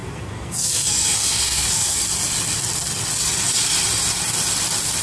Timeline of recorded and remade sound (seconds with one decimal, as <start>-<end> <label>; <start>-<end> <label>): 0.0-2.0 remade; 2.0-5.0 recorded